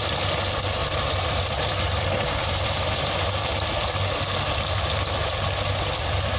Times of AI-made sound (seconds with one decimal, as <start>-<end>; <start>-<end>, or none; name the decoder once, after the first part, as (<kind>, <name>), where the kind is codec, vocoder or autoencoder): 0.8-3.1 (vocoder, BigVGAN v2)